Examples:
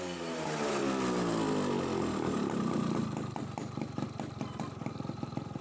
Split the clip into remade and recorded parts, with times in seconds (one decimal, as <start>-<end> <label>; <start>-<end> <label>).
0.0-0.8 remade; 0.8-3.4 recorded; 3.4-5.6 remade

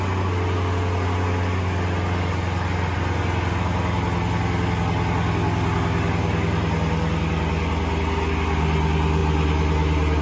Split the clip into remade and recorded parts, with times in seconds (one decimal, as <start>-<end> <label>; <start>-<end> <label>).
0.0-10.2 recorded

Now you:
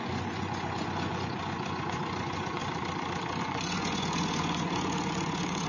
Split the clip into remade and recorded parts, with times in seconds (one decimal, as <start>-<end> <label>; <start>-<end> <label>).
0.0-2.6 remade; 2.6-3.4 recorded; 3.4-5.7 remade

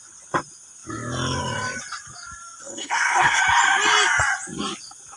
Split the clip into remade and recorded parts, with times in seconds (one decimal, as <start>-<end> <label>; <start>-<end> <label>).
0.0-2.6 recorded; 2.6-3.4 remade; 3.4-5.2 recorded

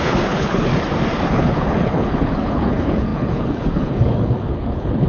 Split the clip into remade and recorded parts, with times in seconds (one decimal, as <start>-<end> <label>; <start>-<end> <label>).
0.0-0.7 remade; 0.7-1.3 recorded; 1.3-5.1 remade

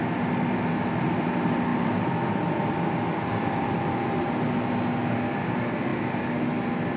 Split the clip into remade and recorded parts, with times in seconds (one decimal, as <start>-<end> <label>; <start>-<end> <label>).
0.0-1.7 recorded; 1.7-4.2 remade; 4.2-7.0 recorded

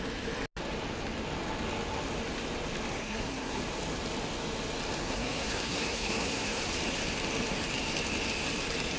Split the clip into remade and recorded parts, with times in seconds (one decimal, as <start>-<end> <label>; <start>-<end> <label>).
0.0-2.9 recorded; 2.9-3.6 remade; 3.6-5.0 recorded; 5.0-6.6 remade; 6.6-9.0 recorded

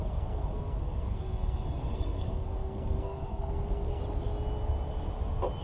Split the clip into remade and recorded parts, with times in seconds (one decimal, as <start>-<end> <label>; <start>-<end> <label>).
0.0-4.0 remade; 4.0-5.6 recorded